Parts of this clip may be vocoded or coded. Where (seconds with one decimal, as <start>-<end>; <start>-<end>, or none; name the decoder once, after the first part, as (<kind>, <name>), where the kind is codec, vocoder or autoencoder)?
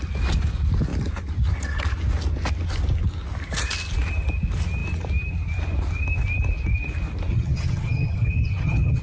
7.3-9.0 (vocoder, HiFi-GAN)